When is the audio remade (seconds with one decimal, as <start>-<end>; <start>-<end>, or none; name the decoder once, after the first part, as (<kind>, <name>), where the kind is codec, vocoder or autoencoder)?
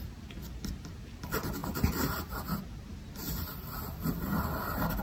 none